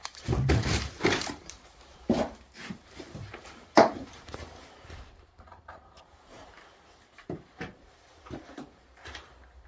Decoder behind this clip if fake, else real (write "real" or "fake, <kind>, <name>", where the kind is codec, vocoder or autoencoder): fake, vocoder, BigVGAN v2